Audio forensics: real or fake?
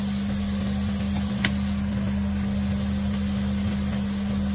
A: real